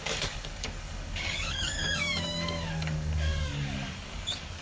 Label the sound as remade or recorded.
remade